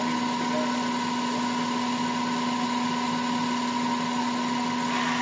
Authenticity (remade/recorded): recorded